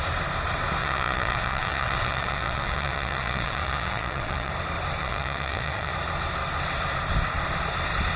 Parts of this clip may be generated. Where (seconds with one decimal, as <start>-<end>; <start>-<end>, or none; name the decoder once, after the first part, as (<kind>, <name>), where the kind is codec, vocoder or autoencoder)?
0.8-4.5 (vocoder, WaveNeXt); 5.0-5.9

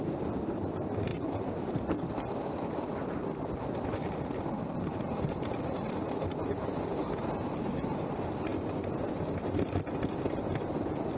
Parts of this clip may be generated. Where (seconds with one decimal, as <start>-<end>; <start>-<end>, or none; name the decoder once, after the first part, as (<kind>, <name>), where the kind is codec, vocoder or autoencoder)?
none

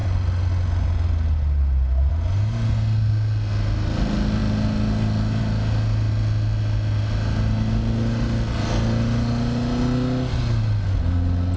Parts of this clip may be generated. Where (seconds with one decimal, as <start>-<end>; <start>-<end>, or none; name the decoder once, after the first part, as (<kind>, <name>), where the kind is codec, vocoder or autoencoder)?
none

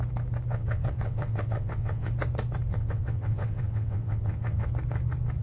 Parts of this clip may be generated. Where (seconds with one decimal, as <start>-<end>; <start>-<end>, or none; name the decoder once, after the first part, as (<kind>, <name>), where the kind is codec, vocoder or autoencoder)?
0.5-2.1 (vocoder, WaveNeXt); 2.7-4.7

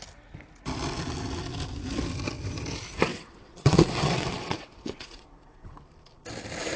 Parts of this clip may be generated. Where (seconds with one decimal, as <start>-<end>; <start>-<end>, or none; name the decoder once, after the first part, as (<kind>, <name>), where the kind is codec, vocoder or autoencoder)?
3.1-5.8 (vocoder, WaveNeXt)

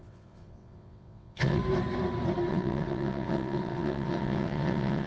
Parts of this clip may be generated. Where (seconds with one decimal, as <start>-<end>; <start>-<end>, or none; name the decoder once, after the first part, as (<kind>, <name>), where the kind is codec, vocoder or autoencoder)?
0.0-1.6 (vocoder, WaveNeXt); 2.5-5.1